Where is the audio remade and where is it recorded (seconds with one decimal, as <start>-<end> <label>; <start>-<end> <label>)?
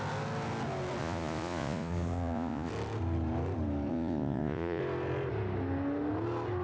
0.0-1.0 recorded; 1.0-2.7 remade; 2.7-3.9 recorded; 3.9-4.8 remade; 4.8-6.6 recorded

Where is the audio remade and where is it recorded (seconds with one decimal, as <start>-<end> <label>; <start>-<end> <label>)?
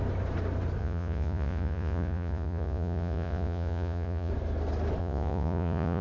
0.0-0.8 recorded; 0.8-4.3 remade; 4.3-5.0 recorded; 5.0-6.0 remade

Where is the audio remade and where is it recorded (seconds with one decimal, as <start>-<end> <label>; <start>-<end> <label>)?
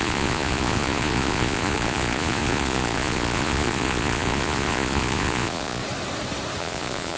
0.0-5.8 remade; 5.8-6.6 recorded; 6.6-7.2 remade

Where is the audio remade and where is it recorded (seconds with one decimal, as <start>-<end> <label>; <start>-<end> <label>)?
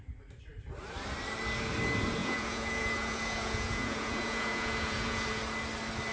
0.0-2.2 recorded; 2.2-5.4 remade; 5.4-6.1 recorded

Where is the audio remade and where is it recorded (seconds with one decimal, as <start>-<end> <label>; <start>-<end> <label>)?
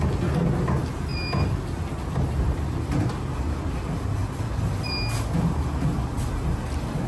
0.0-7.1 recorded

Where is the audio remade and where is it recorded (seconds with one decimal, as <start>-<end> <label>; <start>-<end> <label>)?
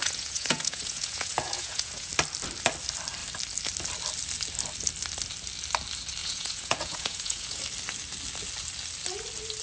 0.0-2.1 remade; 2.1-6.2 recorded; 6.2-7.6 remade; 7.6-9.6 recorded